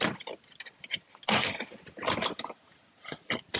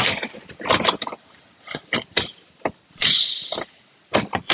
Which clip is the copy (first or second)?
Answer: second